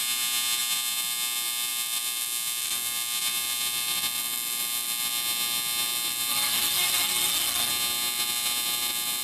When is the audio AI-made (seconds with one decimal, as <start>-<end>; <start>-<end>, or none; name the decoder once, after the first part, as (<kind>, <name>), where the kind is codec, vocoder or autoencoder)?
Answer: 6.3-7.7 (codec, SNAC)